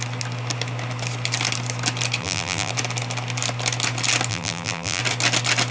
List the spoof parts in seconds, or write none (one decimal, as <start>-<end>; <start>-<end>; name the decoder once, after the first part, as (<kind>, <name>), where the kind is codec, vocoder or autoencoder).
2.2-2.7 (vocoder, BigVGAN v2); 4.3-5.0

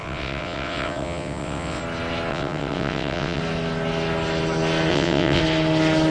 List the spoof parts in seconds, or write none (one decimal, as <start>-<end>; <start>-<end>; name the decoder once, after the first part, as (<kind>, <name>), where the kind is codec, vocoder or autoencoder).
0.0-1.8 (vocoder, WaveNeXt); 2.3-3.4; 4.9-5.4